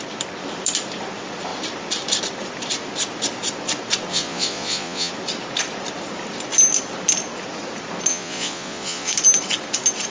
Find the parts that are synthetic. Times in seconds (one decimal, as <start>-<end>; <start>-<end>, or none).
4.1-5.1; 8.1-9.1